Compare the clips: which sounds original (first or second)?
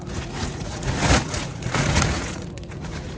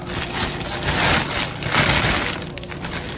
second